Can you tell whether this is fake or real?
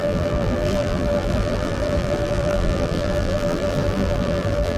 fake